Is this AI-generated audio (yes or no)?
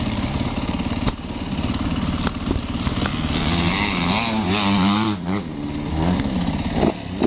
no